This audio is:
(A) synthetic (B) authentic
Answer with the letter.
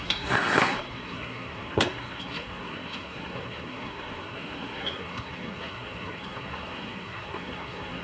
A